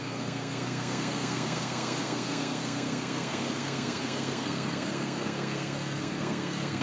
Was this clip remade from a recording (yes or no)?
yes